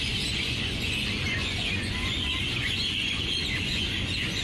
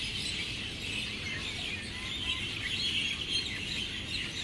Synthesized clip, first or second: first